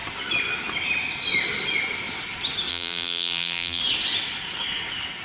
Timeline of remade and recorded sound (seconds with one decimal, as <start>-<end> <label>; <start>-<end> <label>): 0.0-2.7 recorded; 2.7-3.8 remade; 3.8-5.2 recorded